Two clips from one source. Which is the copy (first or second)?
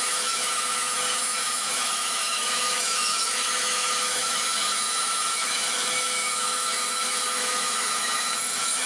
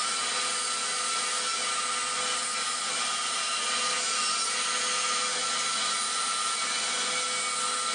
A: first